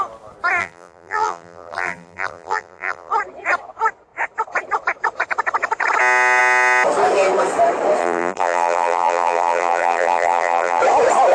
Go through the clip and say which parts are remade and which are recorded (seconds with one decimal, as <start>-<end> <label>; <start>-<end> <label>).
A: 0.0-0.6 recorded; 0.6-3.1 remade; 3.1-8.0 recorded; 8.0-10.8 remade; 10.8-11.3 recorded